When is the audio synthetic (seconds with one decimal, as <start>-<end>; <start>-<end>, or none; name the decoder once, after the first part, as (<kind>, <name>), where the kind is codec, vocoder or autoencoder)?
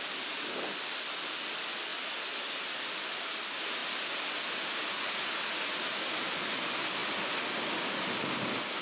none